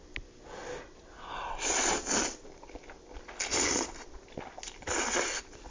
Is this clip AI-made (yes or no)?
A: no